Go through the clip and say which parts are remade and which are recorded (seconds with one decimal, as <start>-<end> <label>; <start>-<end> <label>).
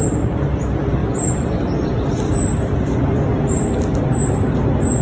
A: 0.0-5.0 recorded